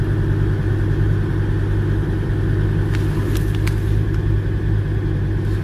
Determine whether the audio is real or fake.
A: real